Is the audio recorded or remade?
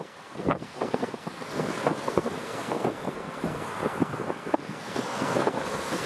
remade